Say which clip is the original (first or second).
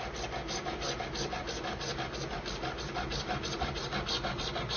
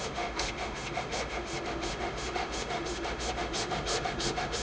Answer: first